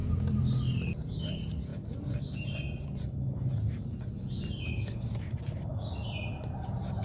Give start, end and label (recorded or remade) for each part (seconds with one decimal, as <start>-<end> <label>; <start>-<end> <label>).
0.0-1.2 remade; 1.2-7.0 recorded